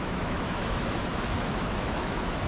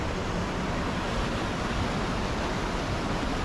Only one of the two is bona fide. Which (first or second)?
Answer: second